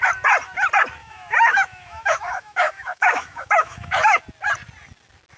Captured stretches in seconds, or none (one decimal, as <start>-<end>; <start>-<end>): 0.0-1.0; 4.2-5.4